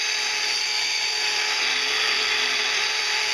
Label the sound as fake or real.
fake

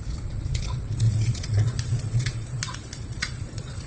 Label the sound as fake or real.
fake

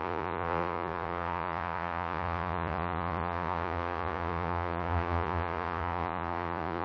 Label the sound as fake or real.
fake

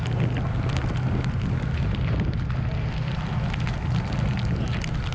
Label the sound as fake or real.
real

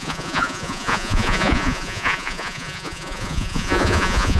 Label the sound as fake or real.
fake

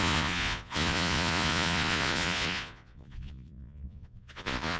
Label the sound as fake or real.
fake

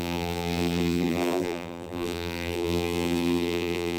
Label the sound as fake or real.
fake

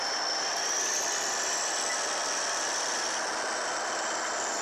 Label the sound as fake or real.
real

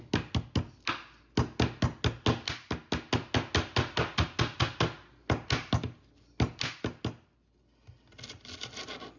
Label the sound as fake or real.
real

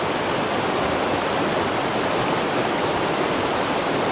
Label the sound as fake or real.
real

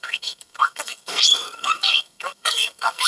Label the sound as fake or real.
fake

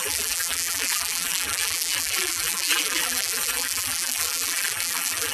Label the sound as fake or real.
fake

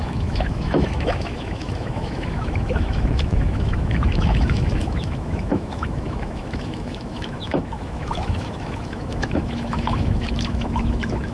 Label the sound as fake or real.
fake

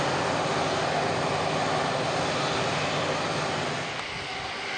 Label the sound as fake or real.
real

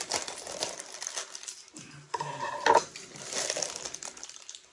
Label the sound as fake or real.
real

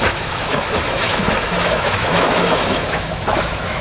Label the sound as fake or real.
fake